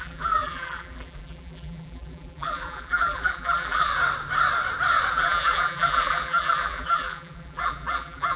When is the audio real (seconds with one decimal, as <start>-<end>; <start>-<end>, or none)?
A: 3.9-5.1